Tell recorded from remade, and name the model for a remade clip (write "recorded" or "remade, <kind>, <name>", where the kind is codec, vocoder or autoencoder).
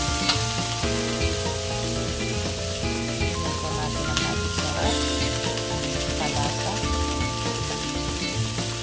recorded